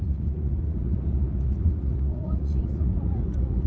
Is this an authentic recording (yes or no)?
no